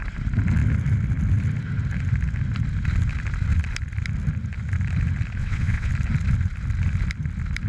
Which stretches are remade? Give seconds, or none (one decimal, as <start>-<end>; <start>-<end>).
5.4-5.9